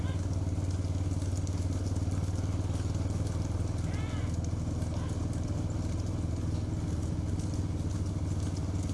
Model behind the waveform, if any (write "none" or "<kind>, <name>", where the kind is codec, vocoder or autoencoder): none